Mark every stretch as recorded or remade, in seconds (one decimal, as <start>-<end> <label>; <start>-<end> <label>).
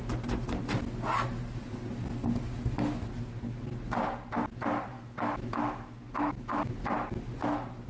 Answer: 0.0-4.9 recorded; 4.9-6.7 remade; 6.7-7.9 recorded